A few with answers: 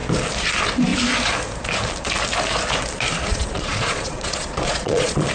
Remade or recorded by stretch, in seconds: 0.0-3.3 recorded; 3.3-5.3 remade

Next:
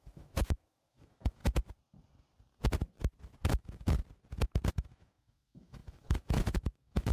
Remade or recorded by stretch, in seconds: 0.0-1.4 remade; 1.4-3.5 recorded; 3.5-4.0 remade; 4.0-4.7 recorded; 4.7-7.1 remade

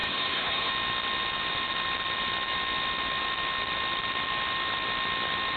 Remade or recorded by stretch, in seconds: 0.0-0.7 remade; 0.7-5.6 recorded

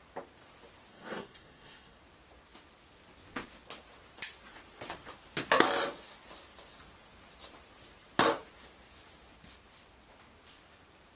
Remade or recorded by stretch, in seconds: 0.0-0.9 recorded; 0.9-2.0 remade; 2.0-11.2 recorded

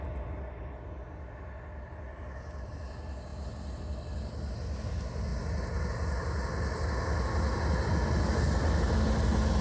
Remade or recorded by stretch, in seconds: 0.0-9.6 recorded

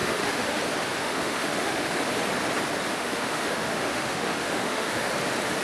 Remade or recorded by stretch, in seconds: 0.0-0.6 remade; 0.6-1.0 recorded; 1.0-2.0 remade; 2.0-2.9 recorded; 2.9-5.1 remade; 5.1-5.6 recorded

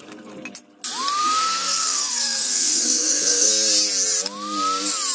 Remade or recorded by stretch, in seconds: 0.0-1.2 recorded; 1.2-3.5 remade; 3.5-5.1 recorded